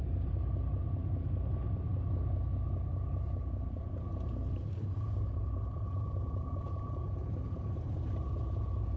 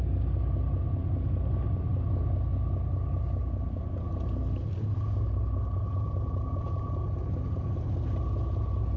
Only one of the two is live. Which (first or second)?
second